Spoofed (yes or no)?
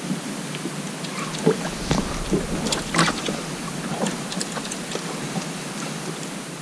no